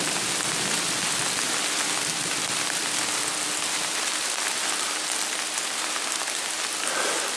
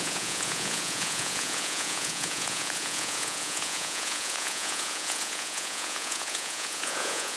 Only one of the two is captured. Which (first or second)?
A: first